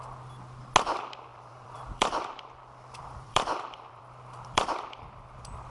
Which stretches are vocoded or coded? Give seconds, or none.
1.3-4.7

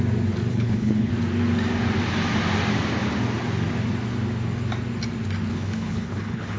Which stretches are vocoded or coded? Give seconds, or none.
0.5-1.1; 5.5-6.6

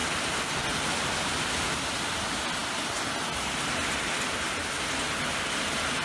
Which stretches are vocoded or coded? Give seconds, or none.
none

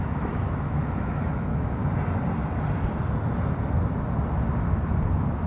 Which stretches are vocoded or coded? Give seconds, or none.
0.0-1.8; 5.1-5.5

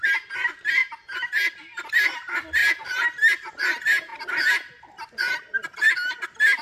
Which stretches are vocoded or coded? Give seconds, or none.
none

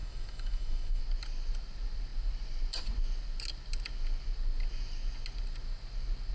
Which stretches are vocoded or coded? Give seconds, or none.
0.0-1.0

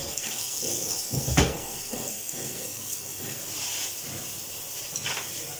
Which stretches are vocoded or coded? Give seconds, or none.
0.0-3.4